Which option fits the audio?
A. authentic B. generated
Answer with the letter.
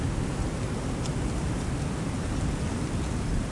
A